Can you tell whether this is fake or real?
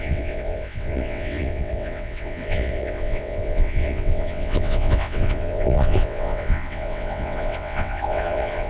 fake